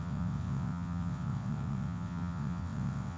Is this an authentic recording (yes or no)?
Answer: no